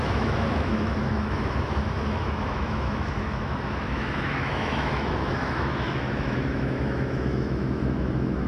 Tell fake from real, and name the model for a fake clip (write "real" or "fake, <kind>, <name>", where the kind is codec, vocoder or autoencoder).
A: fake, autoencoder, DAC-VAE